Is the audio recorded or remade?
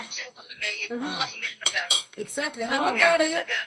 remade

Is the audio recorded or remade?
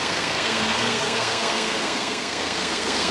remade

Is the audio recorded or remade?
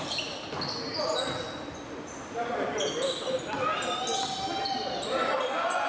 recorded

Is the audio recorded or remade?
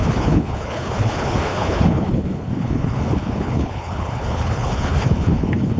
remade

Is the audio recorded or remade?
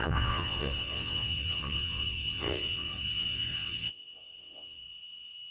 remade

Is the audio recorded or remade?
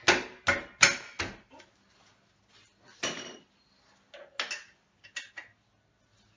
recorded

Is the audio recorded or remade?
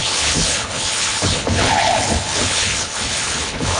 remade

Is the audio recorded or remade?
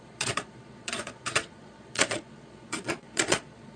remade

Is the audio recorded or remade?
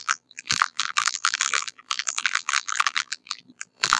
remade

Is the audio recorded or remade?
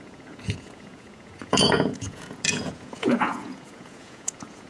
remade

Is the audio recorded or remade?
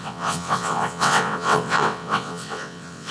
remade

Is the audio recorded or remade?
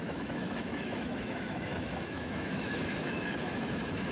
remade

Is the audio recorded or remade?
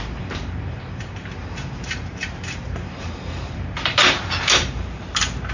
remade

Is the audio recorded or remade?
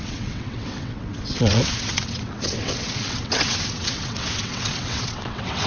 remade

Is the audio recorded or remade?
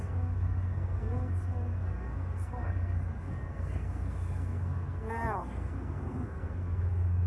remade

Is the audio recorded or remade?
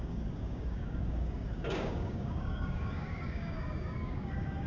remade